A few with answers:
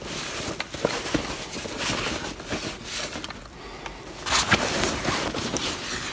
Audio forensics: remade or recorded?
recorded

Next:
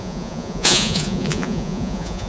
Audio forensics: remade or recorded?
remade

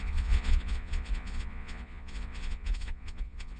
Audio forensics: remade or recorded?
remade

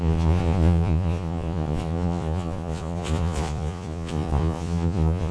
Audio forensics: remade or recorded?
remade